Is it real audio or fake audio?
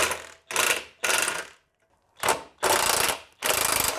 real